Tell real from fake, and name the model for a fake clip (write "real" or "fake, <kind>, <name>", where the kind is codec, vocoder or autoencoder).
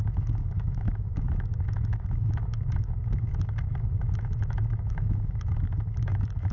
fake, autoencoder, DAC-VAE